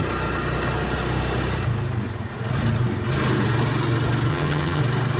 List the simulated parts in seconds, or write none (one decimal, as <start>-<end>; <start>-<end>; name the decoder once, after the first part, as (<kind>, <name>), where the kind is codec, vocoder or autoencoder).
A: 4.3-4.8 (vocoder, HiFi-GAN)